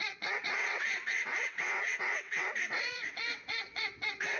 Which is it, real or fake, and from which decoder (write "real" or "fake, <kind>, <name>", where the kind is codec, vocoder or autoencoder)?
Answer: fake, vocoder, WaveNeXt